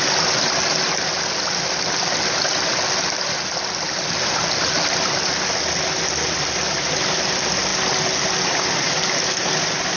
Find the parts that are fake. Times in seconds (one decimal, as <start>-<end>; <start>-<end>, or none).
none